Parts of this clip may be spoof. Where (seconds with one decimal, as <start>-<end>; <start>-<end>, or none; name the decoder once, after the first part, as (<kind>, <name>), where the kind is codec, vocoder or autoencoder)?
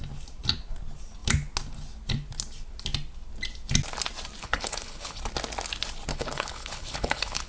4.4-5.2 (codec, HILCodec); 6.1-7.5